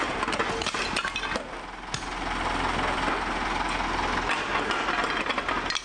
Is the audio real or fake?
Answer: real